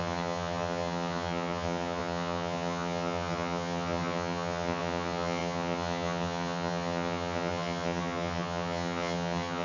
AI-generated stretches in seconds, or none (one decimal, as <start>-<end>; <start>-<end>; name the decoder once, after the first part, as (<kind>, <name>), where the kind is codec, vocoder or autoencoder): 0.0-9.6 (vocoder, HiFi-GAN)